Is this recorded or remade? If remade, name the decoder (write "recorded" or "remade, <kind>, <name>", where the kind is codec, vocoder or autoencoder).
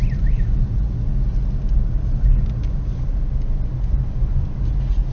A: recorded